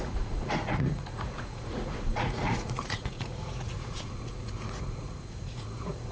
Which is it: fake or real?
fake